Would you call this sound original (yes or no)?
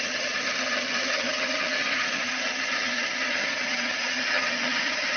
no